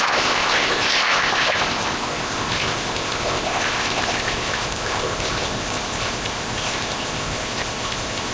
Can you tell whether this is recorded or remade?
remade